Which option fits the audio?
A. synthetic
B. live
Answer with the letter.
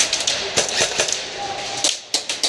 B